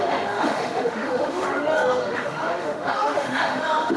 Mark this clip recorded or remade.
remade